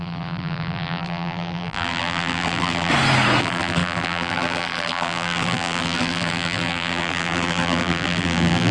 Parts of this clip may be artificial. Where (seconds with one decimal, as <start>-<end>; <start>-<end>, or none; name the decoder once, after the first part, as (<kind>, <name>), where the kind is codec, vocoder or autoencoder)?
0.0-2.9 (vocoder, BigVGAN v2); 3.4-8.7